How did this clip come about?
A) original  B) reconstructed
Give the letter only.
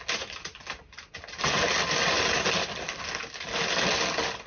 A